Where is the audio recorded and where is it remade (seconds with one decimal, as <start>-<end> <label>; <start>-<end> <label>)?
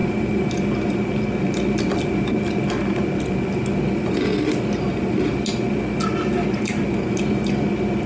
0.0-0.5 remade; 0.5-8.1 recorded